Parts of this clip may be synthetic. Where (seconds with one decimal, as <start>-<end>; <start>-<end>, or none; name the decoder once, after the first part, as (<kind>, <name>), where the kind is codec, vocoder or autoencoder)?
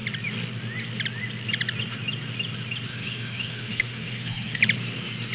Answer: 2.9-4.6 (autoencoder, DAC-VAE)